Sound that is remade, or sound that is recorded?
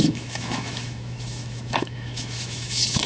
remade